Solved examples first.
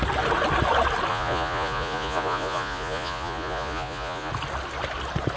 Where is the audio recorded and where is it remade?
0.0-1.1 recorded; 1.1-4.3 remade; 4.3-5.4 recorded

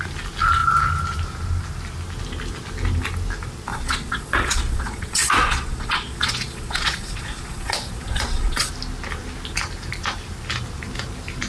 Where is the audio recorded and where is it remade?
0.0-3.7 recorded; 3.7-8.7 remade; 8.7-11.5 recorded

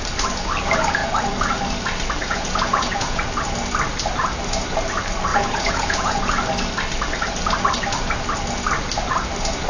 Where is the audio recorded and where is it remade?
0.0-2.2 recorded; 2.2-3.2 remade; 3.2-5.3 recorded; 5.3-6.2 remade; 6.2-9.7 recorded

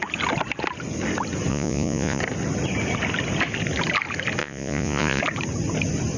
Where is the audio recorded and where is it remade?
0.0-1.5 recorded; 1.5-2.2 remade; 2.2-4.4 recorded; 4.4-5.2 remade; 5.2-6.2 recorded